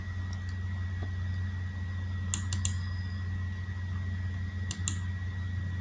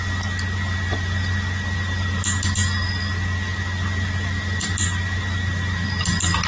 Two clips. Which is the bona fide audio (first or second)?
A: first